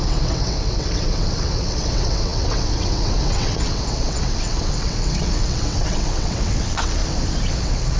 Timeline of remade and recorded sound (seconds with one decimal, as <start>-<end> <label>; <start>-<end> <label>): 0.0-7.0 remade; 7.0-7.6 recorded; 7.6-8.0 remade